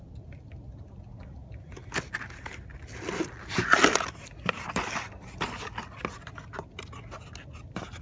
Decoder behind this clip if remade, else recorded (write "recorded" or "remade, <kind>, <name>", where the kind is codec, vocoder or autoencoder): recorded